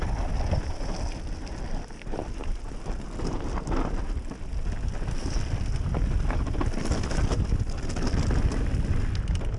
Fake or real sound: real